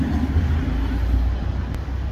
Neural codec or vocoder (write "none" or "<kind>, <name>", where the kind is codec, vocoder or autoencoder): none